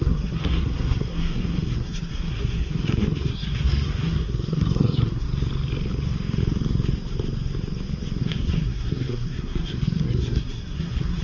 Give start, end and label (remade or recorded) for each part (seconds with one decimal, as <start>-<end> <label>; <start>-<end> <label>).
0.0-5.3 remade; 5.3-8.2 recorded; 8.2-11.2 remade